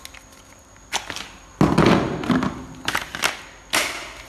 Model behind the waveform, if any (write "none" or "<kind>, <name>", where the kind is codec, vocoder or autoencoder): none